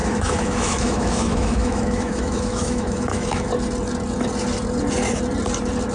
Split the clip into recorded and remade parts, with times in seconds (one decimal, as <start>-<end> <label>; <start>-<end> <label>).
0.0-3.5 remade; 3.5-5.9 recorded